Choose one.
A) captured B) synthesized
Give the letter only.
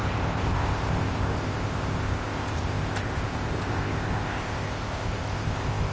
B